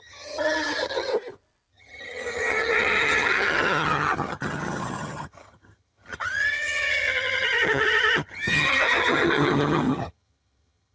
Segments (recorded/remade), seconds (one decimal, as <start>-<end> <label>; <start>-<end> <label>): 0.0-1.1 remade; 1.1-1.7 recorded; 1.7-10.9 remade